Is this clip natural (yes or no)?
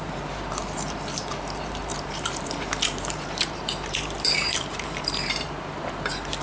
no